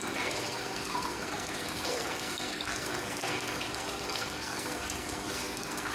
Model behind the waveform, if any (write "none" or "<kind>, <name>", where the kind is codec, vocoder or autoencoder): codec, SNAC